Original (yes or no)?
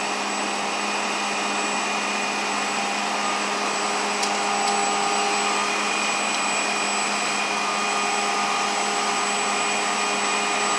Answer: yes